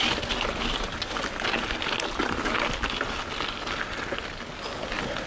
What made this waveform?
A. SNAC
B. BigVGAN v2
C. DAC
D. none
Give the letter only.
D